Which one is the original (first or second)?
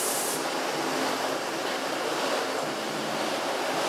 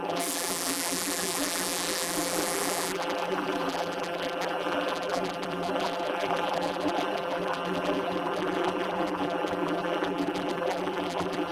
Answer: first